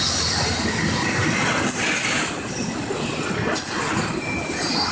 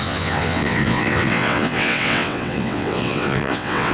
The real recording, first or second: first